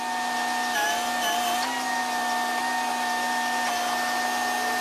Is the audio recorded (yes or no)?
yes